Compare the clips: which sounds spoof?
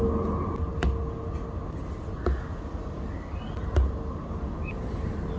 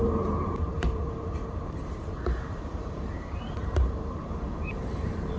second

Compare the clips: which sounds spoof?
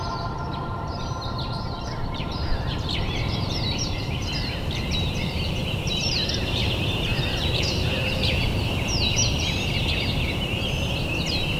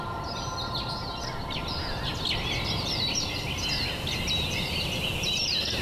first